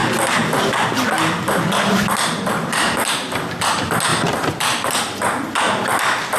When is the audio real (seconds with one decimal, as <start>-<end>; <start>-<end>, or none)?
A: 0.0-4.1; 4.9-6.4

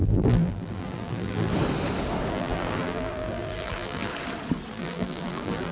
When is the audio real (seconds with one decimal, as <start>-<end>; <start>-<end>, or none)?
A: 1.5-2.3; 4.1-4.7